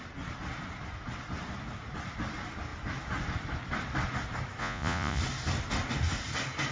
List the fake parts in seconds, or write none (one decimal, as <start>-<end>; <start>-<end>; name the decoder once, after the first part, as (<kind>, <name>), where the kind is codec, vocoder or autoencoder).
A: 4.6-5.2 (vocoder, Vocos)